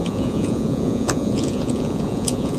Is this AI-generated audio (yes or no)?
yes